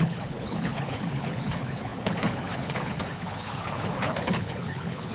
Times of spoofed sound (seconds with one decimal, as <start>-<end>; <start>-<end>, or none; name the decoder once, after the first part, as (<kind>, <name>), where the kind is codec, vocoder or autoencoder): 0.0-5.1 (codec, HILCodec)

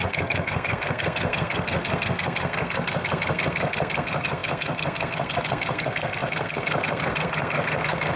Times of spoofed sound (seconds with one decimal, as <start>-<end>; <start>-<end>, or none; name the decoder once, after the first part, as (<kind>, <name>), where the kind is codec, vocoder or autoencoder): 0.0-8.2 (codec, SNAC)

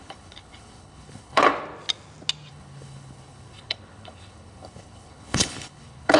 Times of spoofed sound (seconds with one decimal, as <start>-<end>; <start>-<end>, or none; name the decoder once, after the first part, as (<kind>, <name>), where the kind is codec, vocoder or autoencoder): 0.0-1.5 (codec, HILCodec); 2.5-6.2

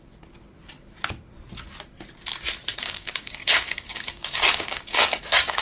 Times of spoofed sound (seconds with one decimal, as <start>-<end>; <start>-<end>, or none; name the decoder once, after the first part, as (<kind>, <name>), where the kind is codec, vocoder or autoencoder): 2.7-5.6 (codec, DAC)

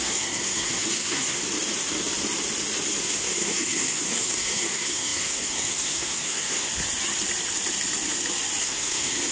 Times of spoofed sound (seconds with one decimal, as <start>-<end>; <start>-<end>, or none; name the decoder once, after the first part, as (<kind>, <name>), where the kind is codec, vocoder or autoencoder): 0.0-1.4 (codec, SNAC); 3.0-6.7; 8.6-9.3

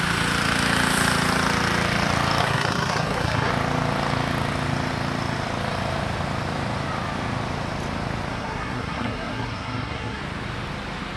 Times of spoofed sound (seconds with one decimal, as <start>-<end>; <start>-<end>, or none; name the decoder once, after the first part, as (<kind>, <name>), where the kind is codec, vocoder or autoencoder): 2.4-3.5 (codec, SNAC); 8.3-10.2